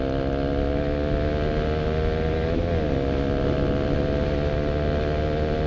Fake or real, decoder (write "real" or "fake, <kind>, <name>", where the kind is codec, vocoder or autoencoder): real